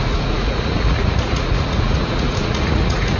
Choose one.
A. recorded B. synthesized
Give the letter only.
B